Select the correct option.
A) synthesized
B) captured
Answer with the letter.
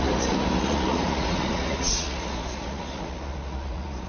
A